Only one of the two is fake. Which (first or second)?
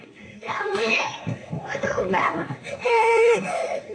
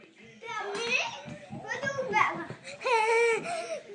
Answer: first